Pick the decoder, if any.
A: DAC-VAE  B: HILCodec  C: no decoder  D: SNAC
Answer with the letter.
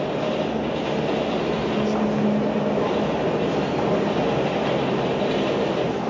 C